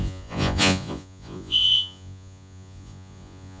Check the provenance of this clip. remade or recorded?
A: remade